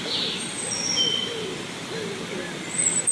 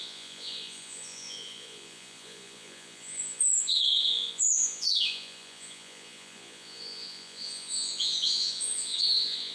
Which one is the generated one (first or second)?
second